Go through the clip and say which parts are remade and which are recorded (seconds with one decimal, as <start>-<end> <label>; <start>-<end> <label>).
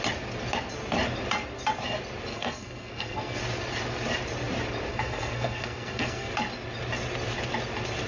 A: 0.0-2.3 recorded; 2.3-3.4 remade; 3.4-4.9 recorded; 4.9-6.3 remade; 6.3-8.1 recorded